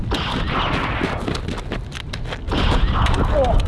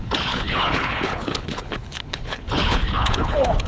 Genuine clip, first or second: first